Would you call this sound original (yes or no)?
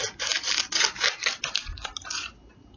yes